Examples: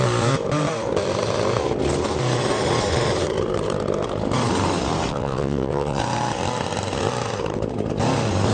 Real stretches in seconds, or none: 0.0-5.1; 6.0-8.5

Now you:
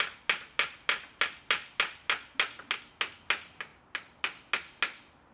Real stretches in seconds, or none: 0.0-5.3

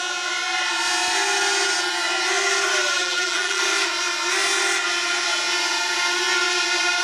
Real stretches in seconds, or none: 0.0-3.0; 3.6-7.0